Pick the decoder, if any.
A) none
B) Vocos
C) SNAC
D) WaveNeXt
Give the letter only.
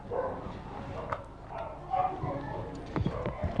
A